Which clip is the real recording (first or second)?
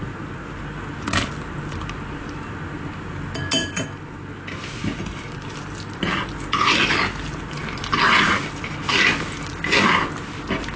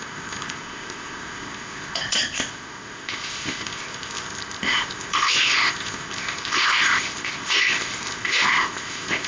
first